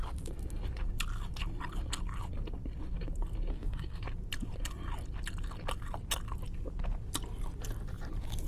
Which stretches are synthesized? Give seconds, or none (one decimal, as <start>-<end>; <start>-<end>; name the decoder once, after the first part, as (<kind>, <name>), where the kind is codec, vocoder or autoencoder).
3.5-4.0 (codec, SNAC)